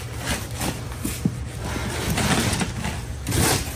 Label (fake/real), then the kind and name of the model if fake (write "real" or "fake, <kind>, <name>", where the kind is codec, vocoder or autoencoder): fake, vocoder, BigVGAN v2